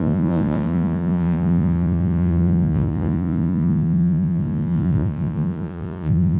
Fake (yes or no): yes